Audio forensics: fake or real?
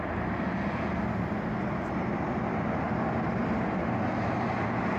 real